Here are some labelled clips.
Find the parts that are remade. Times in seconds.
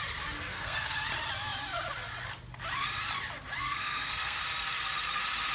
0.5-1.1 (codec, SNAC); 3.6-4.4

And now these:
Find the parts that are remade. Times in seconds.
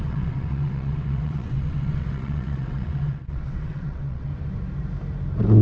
0.0-4.3 (vocoder, WaveNeXt)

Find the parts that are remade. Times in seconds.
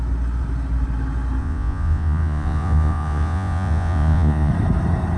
1.4-4.5 (vocoder, Vocos)